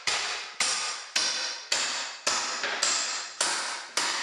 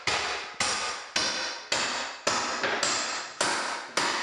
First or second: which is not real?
first